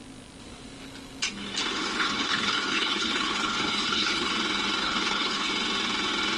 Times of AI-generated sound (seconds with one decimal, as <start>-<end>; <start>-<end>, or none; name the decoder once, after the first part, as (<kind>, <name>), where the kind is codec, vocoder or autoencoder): 1.7-4.3 (codec, HILCodec); 4.8-5.5